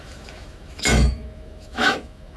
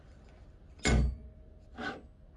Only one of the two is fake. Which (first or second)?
first